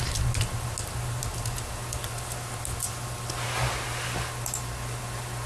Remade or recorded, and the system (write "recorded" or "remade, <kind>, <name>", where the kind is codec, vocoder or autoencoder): recorded